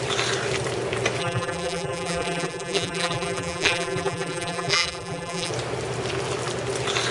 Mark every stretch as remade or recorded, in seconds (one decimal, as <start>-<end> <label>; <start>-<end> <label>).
0.0-1.2 recorded; 1.2-5.5 remade; 5.5-7.1 recorded